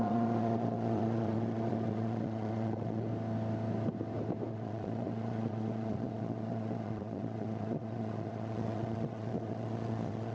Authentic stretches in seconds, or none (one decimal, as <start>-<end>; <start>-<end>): 3.1-4.5